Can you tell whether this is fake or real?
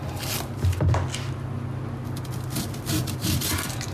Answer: real